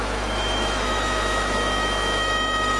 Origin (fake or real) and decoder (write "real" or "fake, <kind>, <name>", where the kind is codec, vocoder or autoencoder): fake, autoencoder, DAC-VAE